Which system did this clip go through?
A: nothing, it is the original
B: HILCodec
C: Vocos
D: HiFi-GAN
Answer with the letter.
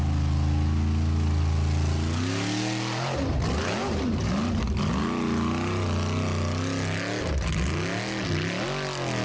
A